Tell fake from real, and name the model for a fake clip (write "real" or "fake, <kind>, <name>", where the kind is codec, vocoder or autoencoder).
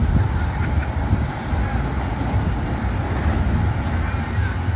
real